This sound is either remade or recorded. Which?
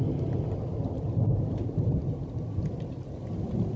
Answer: recorded